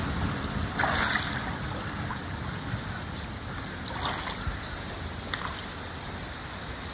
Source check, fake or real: real